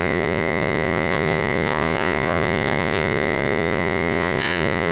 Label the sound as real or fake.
fake